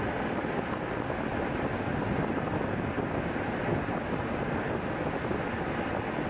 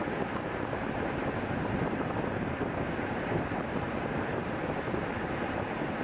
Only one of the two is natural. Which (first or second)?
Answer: first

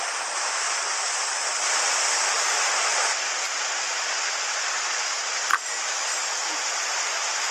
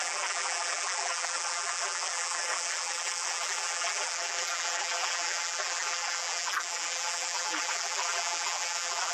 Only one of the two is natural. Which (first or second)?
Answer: first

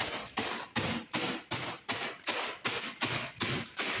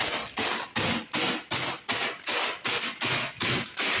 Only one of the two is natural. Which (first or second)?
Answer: second